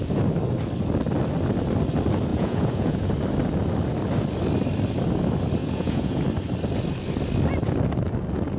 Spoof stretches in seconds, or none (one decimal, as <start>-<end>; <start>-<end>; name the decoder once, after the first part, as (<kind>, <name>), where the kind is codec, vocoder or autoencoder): 2.3-3.1 (vocoder, Vocos); 5.6-6.2